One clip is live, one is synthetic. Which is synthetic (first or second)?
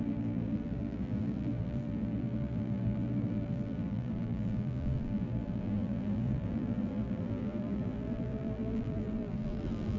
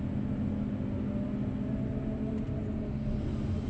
first